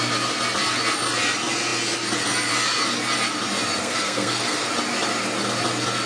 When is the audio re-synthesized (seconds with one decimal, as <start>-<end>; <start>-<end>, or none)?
3.8-4.7